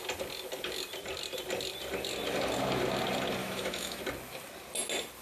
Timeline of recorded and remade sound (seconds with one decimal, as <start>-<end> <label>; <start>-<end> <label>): 0.0-3.4 recorded; 3.4-4.0 remade; 4.0-5.2 recorded